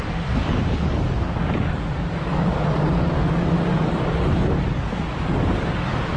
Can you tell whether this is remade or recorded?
remade